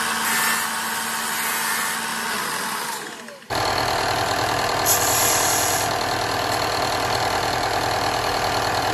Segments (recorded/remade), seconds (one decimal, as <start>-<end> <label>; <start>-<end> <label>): 0.0-8.9 recorded